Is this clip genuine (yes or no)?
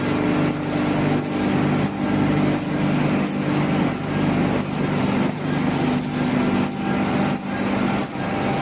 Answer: yes